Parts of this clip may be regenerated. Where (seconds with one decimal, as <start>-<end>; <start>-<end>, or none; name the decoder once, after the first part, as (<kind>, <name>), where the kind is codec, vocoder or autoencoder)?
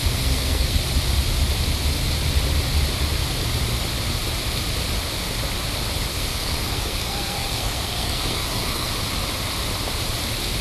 0.0-0.8 (codec, SNAC); 6.1-8.9